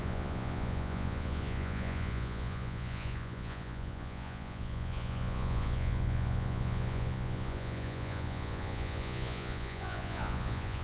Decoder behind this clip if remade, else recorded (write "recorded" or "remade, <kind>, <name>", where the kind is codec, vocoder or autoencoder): remade, vocoder, Vocos